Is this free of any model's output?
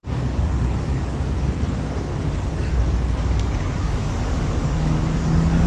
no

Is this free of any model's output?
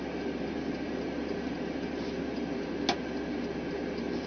yes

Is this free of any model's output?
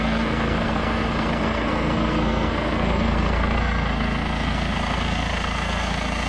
no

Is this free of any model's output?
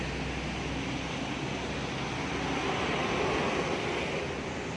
yes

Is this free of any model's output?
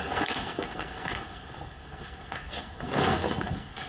no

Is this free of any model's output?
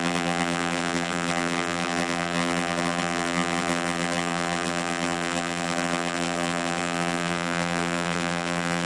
no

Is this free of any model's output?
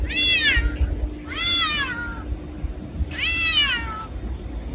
yes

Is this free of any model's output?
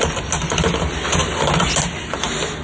yes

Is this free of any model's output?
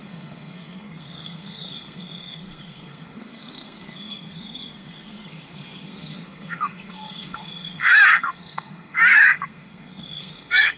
no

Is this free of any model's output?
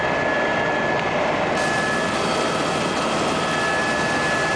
yes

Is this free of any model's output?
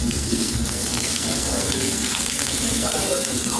no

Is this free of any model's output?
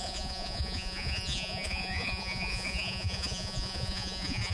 no